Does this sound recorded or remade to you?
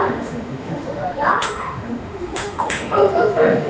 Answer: remade